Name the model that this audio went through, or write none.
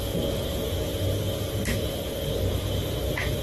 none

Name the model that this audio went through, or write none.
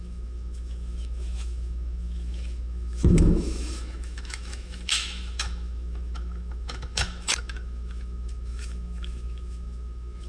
autoencoder, DAC-VAE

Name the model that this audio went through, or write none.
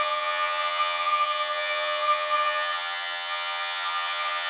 vocoder, HiFi-GAN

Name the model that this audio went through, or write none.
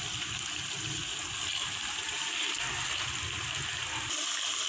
none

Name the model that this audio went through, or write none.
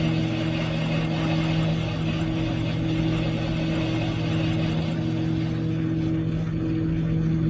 none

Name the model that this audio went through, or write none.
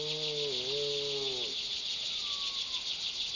none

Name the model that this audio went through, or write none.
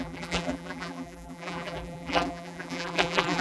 vocoder, BigVGAN v2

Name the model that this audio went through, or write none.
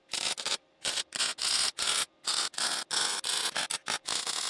none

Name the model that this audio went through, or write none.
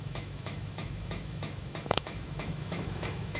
autoencoder, DAC-VAE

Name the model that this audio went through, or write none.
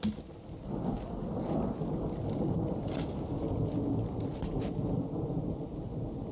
none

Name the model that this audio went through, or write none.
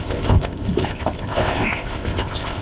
codec, ZipCodec